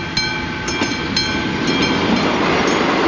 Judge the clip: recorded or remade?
recorded